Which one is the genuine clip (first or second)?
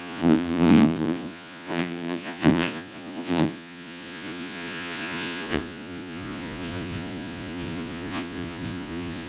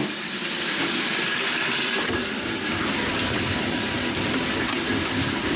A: second